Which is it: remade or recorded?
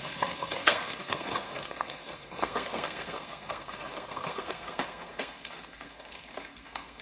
remade